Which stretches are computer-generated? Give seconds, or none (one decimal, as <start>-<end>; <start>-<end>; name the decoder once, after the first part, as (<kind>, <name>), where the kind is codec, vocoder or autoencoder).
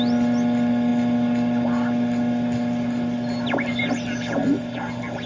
none